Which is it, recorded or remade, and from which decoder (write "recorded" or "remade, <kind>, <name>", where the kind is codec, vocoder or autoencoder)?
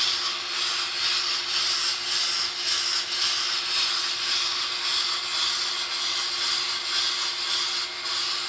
recorded